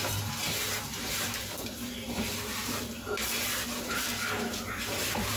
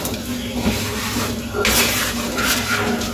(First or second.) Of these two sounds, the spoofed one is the first